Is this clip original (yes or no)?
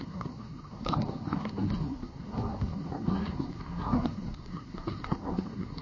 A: no